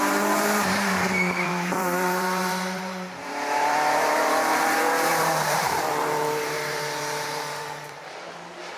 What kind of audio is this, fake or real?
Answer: fake